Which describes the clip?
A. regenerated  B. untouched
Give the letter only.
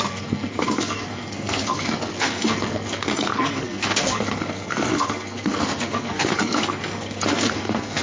A